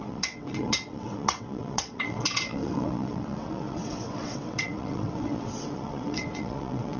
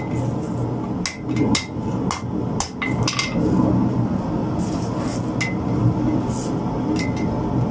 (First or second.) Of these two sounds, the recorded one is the second